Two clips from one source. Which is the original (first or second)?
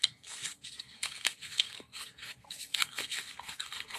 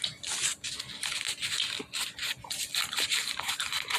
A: second